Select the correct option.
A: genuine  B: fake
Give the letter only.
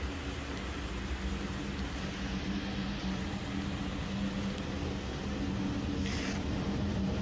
A